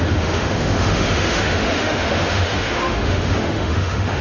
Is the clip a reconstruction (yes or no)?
yes